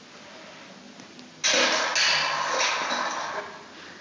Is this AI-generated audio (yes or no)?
no